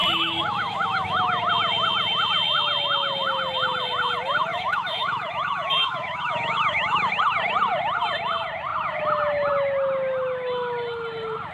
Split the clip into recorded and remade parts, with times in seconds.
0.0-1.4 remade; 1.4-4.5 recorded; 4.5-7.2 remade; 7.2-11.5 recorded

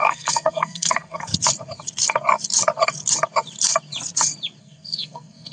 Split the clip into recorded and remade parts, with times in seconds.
0.0-1.3 remade; 1.3-4.6 recorded; 4.6-5.5 remade